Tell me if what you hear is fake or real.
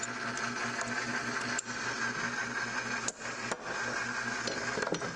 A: real